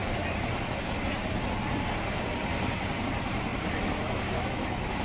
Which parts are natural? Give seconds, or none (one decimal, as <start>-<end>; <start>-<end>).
3.0-5.0